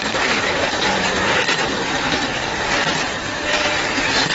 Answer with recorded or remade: remade